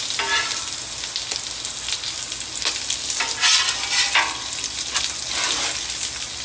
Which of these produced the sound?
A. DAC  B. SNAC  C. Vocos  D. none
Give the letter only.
D